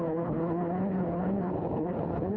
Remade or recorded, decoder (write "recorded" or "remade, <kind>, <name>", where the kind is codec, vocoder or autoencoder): remade, codec, HILCodec